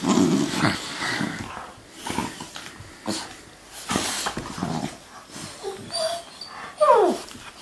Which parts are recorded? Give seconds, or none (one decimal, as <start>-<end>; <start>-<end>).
0.0-0.9; 1.5-7.6